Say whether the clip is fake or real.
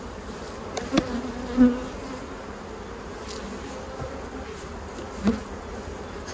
real